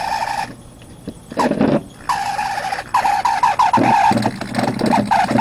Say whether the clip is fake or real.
real